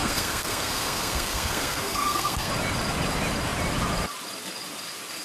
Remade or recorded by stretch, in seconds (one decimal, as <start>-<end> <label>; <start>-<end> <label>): 0.0-2.5 remade; 2.5-5.2 recorded